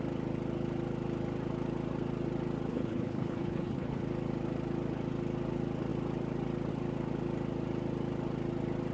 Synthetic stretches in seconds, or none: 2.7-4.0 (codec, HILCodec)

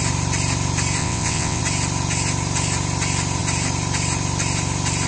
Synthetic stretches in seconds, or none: 1.0-1.6 (vocoder, WaveNeXt)

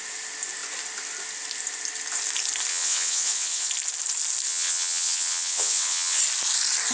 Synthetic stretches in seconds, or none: 2.7-3.7 (vocoder, WaveNeXt); 4.5-6.2

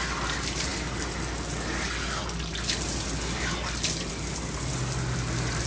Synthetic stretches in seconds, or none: none

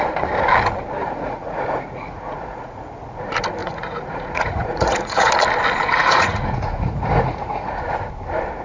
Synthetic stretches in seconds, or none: 1.0-2.9 (vocoder, Vocos); 3.6-5.3; 6.0-7.8